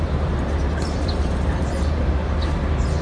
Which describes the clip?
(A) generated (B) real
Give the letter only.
A